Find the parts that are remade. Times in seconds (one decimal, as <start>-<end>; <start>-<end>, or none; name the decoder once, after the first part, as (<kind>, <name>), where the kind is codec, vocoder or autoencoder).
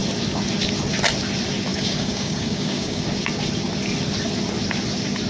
1.7-3.0 (codec, DAC)